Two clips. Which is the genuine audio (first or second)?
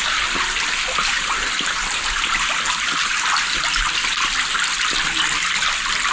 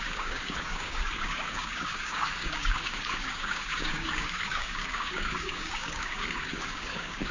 first